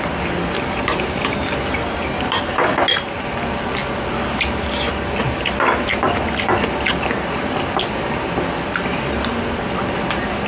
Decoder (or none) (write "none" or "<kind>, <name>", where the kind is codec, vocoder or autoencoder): none